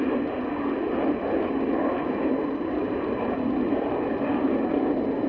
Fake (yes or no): yes